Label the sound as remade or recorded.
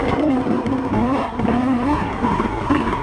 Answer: remade